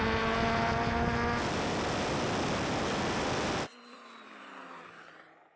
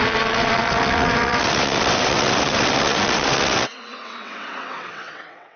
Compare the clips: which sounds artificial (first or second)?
second